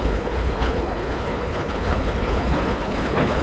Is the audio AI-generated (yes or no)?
yes